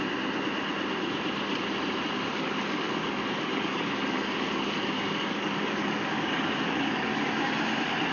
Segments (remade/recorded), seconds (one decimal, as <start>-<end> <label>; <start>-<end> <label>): 0.0-2.3 recorded; 2.3-7.2 remade; 7.2-8.1 recorded